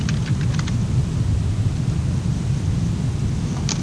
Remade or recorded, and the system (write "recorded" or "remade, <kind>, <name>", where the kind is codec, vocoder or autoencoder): recorded